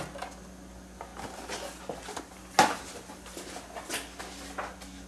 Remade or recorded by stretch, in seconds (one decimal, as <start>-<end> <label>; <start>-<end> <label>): 0.0-5.1 recorded